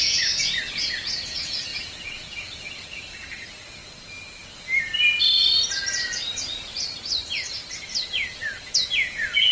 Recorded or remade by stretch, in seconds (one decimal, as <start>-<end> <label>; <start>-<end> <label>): 0.0-3.8 remade; 3.8-8.6 recorded; 8.6-9.5 remade